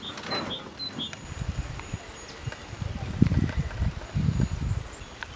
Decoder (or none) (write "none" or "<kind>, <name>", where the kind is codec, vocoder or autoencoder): none